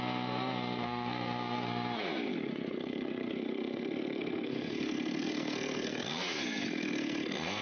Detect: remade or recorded remade